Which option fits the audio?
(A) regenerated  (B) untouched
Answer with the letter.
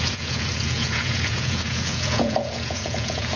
A